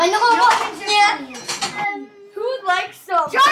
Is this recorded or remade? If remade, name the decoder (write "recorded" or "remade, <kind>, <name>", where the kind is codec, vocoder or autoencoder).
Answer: recorded